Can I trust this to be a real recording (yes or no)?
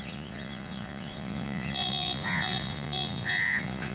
no